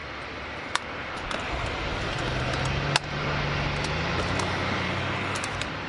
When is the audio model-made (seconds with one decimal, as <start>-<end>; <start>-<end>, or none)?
0.0-1.9; 5.4-5.9